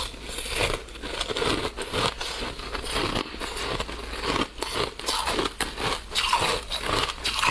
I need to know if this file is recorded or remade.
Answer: recorded